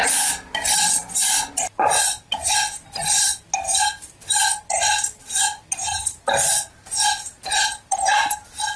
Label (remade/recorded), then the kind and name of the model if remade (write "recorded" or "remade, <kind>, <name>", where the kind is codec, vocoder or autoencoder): recorded